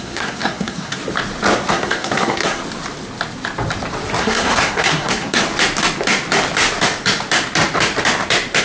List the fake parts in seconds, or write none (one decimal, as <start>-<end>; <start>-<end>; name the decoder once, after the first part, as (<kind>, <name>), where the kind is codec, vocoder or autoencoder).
0.0-1.0 (codec, SNAC); 1.7-2.6; 4.2-5.4